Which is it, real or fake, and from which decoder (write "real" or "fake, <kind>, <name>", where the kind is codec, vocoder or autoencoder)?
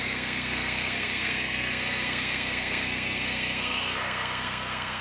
fake, codec, SNAC